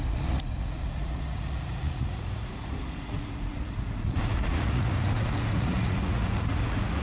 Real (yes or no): no